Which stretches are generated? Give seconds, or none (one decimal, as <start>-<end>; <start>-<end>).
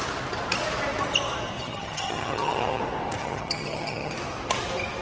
1.6-2.8; 3.2-4.1